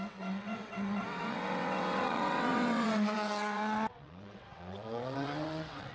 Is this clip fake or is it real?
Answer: fake